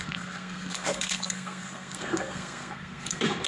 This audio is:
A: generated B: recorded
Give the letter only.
A